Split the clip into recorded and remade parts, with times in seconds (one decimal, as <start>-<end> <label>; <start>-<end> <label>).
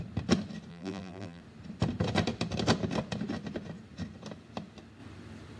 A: 0.0-0.7 recorded; 0.7-1.4 remade; 1.4-5.6 recorded